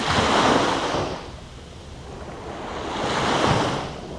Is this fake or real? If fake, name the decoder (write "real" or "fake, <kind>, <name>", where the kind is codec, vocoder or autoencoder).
real